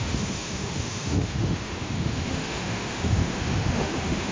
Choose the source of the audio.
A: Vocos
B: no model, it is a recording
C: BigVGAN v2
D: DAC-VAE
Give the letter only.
D